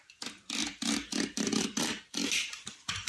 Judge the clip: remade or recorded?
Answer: remade